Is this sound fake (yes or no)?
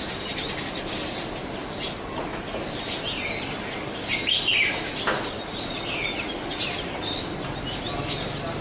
no